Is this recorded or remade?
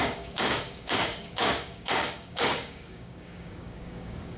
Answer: remade